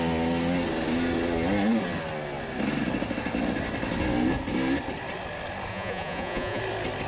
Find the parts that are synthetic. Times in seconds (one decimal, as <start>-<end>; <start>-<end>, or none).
5.7-6.6